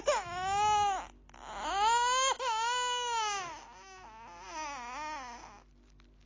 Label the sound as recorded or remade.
recorded